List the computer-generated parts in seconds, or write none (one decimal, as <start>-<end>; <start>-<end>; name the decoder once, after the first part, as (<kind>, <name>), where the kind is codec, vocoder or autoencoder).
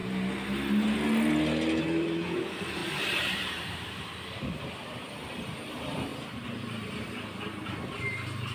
1.8-8.5 (vocoder, BigVGAN v2)